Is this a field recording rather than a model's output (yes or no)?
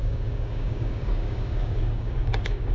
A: no